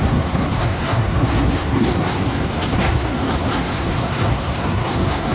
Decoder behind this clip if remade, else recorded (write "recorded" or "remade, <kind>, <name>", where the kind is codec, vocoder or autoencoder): remade, codec, SNAC